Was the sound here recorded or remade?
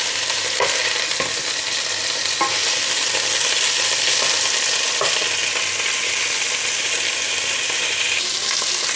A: recorded